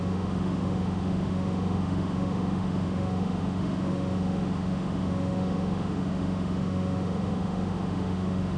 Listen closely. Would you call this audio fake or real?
fake